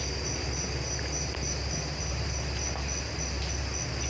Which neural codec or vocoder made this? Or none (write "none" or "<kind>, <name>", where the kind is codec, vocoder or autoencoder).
none